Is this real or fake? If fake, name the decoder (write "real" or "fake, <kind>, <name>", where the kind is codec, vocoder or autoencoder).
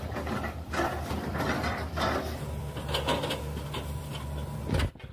fake, vocoder, BigVGAN v2